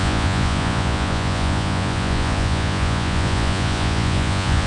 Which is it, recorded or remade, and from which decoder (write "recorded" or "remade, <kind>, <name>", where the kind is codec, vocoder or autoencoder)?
remade, vocoder, Vocos